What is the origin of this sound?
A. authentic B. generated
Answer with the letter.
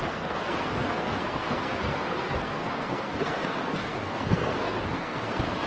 B